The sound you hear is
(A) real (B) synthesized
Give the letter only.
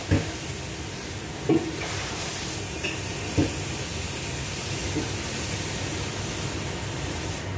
A